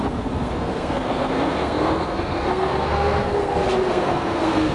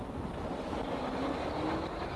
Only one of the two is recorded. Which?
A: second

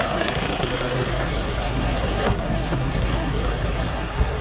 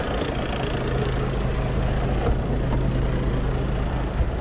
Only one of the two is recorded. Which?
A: second